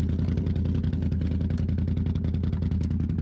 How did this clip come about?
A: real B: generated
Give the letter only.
A